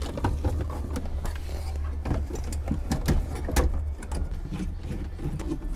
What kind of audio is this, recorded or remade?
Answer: recorded